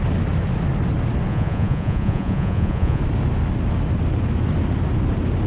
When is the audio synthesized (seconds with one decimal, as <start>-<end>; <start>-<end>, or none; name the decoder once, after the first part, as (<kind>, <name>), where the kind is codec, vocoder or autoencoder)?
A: 1.3-3.0 (vocoder, Vocos)